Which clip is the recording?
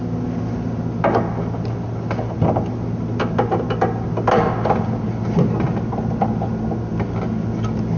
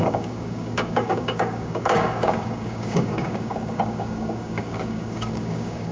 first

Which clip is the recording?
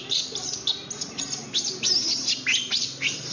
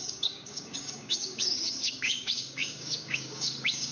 first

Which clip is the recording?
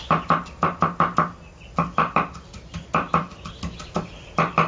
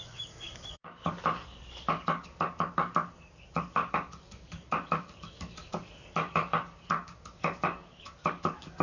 first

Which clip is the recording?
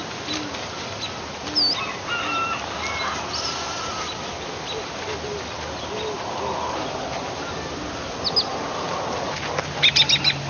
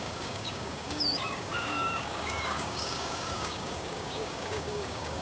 first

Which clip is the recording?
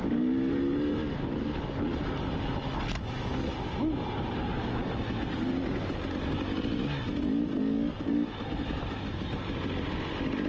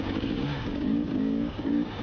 first